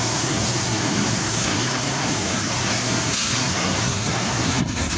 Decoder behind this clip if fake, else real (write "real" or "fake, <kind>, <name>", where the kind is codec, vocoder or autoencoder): fake, codec, SNAC